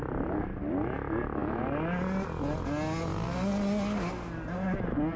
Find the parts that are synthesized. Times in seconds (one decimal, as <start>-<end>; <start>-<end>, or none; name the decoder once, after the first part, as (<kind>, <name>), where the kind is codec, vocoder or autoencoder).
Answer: none

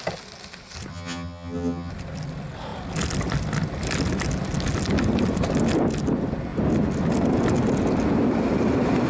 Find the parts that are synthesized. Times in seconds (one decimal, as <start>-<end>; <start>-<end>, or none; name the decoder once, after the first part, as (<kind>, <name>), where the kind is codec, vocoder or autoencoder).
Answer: 0.9-1.9 (vocoder, HiFi-GAN)

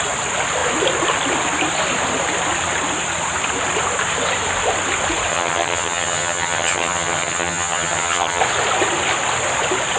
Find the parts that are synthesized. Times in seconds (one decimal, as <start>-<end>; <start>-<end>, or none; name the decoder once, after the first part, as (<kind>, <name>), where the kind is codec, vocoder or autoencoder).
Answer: 5.3-8.4 (vocoder, HiFi-GAN)

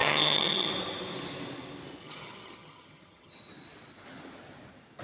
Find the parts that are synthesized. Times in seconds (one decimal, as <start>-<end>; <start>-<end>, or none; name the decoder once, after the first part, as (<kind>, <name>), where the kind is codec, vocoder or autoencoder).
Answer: 0.0-0.7 (vocoder, HiFi-GAN); 2.0-3.5

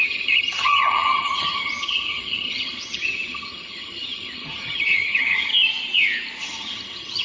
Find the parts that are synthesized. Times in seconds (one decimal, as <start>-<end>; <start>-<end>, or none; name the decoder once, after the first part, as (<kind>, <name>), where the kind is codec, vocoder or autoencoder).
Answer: 0.0-5.5 (vocoder, HiFi-GAN); 6.4-7.2

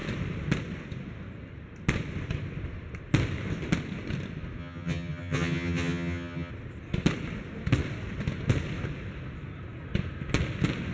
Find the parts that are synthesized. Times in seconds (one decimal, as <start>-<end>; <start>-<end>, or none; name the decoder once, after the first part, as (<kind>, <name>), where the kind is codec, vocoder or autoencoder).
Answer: 4.6-6.5 (vocoder, HiFi-GAN)

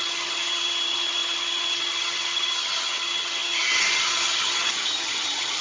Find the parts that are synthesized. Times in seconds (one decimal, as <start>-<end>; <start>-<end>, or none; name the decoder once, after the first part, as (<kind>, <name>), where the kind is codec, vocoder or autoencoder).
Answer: 0.0-5.6 (vocoder, HiFi-GAN)

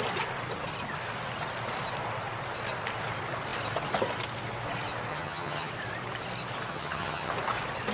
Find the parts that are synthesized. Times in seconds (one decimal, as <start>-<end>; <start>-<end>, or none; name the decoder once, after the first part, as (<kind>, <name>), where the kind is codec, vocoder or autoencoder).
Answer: 5.1-5.7 (vocoder, HiFi-GAN); 6.7-7.3